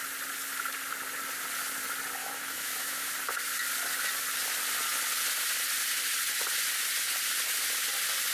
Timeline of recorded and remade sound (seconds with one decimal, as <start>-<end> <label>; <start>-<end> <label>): 0.0-2.2 recorded; 2.2-3.1 remade; 3.1-8.3 recorded